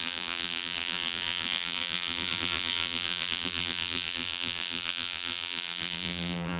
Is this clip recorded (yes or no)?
no